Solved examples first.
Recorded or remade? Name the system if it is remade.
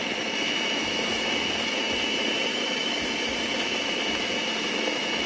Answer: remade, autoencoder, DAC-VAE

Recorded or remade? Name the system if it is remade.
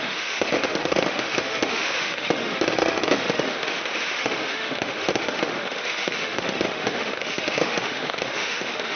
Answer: remade, autoencoder, DAC-VAE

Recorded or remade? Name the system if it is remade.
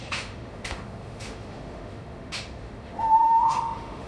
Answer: remade, autoencoder, DAC-VAE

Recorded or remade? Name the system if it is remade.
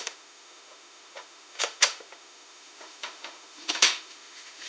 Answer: remade, autoencoder, DAC-VAE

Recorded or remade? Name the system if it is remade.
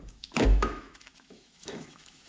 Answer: remade, autoencoder, DAC-VAE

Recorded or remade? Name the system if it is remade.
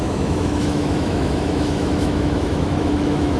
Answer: remade, autoencoder, DAC-VAE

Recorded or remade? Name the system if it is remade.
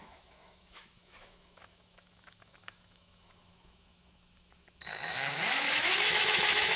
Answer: remade, autoencoder, DAC-VAE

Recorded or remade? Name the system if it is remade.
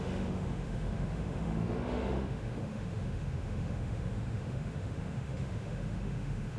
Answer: remade, autoencoder, DAC-VAE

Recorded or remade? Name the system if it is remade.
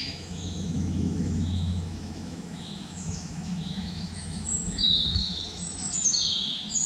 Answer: remade, autoencoder, DAC-VAE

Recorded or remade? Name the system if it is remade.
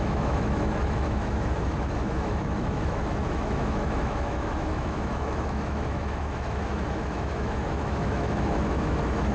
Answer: remade, autoencoder, DAC-VAE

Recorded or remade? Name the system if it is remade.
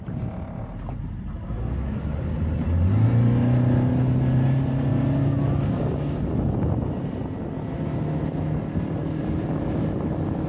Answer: recorded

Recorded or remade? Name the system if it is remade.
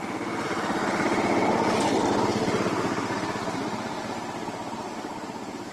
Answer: recorded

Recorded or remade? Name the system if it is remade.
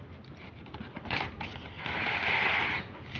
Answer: recorded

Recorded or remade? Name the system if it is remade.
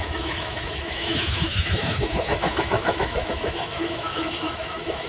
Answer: remade, autoencoder, DAC-VAE